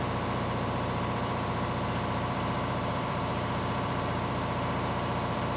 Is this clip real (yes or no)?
no